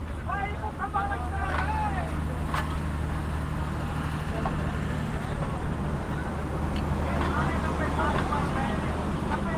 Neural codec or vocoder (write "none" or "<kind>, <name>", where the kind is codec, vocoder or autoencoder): none